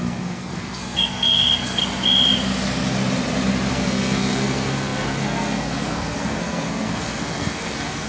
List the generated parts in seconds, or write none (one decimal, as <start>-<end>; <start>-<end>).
0.0-1.8; 3.7-8.1